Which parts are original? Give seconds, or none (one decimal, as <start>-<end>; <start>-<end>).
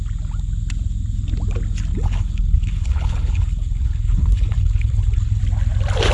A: 0.0-1.9; 5.4-6.1